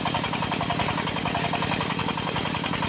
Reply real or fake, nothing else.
real